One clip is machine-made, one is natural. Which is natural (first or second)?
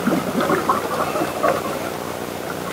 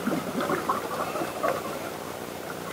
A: first